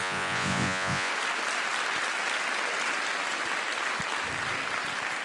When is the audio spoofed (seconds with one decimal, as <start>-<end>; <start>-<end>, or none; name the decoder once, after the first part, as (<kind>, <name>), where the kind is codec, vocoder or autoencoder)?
0.0-1.1 (vocoder, Vocos)